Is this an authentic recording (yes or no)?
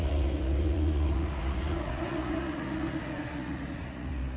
no